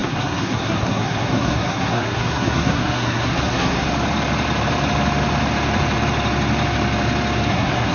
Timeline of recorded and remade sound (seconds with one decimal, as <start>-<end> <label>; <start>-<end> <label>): 0.0-3.9 remade; 3.9-7.5 recorded; 7.5-7.9 remade